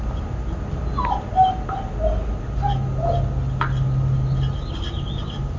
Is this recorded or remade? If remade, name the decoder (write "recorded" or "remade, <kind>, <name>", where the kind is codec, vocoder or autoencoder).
recorded